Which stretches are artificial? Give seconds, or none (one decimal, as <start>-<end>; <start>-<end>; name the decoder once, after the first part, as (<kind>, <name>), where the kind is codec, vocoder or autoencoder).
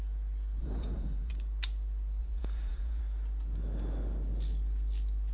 0.6-1.3 (vocoder, Vocos); 2.2-3.0